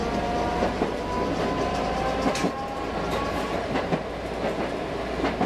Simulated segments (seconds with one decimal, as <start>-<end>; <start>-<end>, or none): none